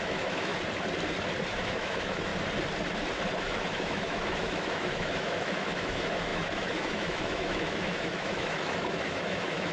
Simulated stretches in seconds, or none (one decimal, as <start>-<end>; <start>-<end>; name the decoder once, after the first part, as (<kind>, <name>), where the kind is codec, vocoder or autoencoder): 0.0-0.5 (autoencoder, DAC-VAE); 1.5-2.3; 3.4-9.7